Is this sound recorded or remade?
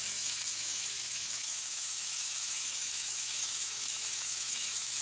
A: remade